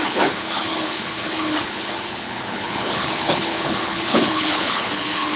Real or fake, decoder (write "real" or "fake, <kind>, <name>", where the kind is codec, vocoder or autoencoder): fake, codec, HILCodec